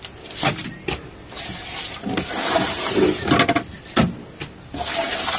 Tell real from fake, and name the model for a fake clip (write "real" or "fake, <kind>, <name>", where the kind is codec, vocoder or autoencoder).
real